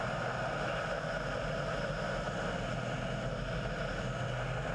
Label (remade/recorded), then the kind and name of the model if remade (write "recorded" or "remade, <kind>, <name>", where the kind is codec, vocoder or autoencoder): recorded